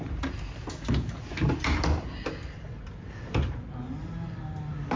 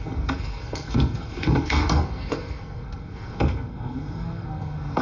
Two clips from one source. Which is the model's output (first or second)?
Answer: second